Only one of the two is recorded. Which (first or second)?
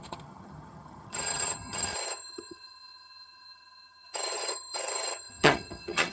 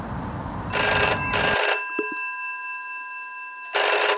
second